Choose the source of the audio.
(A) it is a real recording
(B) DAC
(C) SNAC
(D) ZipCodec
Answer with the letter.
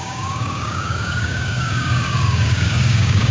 B